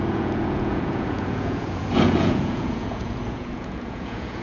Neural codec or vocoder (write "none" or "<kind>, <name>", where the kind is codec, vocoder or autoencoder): vocoder, Vocos